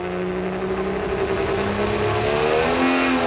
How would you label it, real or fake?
real